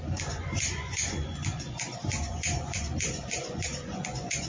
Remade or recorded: remade